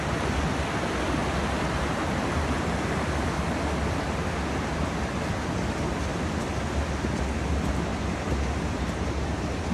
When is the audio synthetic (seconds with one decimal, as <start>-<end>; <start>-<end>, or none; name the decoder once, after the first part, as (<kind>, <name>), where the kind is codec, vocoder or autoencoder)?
1.2-2.0 (vocoder, BigVGAN v2); 7.9-9.7